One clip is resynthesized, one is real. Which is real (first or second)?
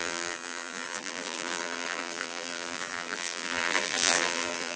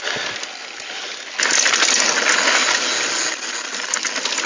second